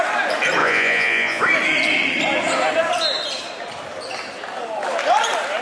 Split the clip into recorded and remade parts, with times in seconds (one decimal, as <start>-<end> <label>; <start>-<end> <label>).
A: 0.0-0.6 recorded; 0.6-1.4 remade; 1.4-5.6 recorded